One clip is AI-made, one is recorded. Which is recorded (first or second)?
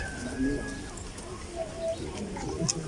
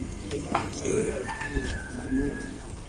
first